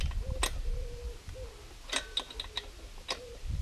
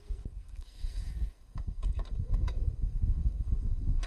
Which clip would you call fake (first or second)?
second